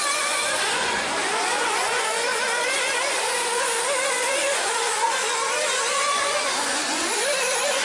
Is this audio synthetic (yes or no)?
yes